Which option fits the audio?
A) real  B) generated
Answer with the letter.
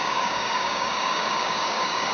B